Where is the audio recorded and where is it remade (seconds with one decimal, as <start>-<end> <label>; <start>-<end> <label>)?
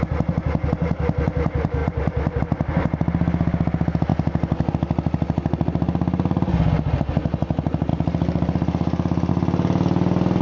0.0-10.4 recorded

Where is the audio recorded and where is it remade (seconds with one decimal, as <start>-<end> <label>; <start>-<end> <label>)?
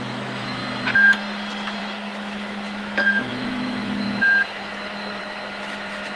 0.0-0.6 remade; 0.6-1.8 recorded; 1.8-6.2 remade